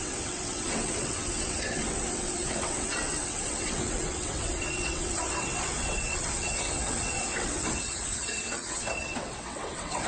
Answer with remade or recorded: remade